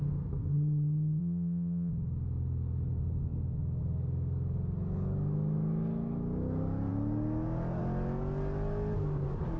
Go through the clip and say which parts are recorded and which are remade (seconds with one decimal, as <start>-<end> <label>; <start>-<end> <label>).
0.0-1.2 recorded; 1.2-1.9 remade; 1.9-9.6 recorded